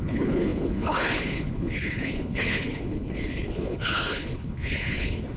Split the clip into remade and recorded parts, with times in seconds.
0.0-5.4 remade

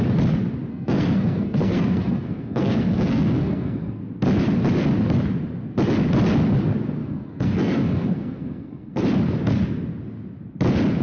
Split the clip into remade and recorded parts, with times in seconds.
0.0-0.7 recorded; 0.7-4.0 remade; 4.0-7.0 recorded; 7.0-9.0 remade; 9.0-11.0 recorded

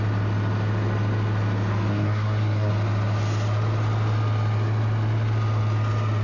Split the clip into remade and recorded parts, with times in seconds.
0.0-1.9 recorded; 1.9-2.7 remade; 2.7-6.2 recorded

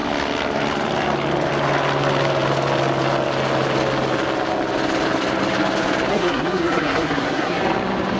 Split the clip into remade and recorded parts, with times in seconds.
0.0-6.1 recorded; 6.1-7.6 remade; 7.6-8.2 recorded

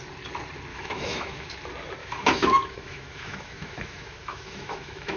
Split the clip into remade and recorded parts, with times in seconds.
0.0-0.7 recorded; 0.7-1.5 remade; 1.5-2.0 recorded; 2.0-5.2 remade

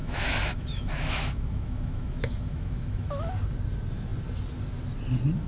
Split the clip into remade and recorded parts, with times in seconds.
0.0-3.3 remade; 3.3-5.5 recorded

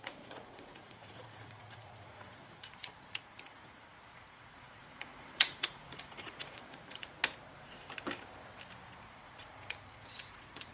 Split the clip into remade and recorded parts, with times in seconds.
0.0-7.2 remade; 7.2-9.1 recorded; 9.1-10.7 remade